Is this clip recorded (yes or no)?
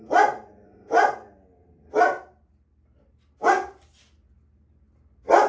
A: yes